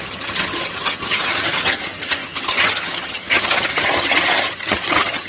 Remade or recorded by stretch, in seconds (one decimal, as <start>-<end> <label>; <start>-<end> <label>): 0.0-5.3 remade